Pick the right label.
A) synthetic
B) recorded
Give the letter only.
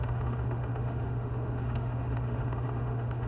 A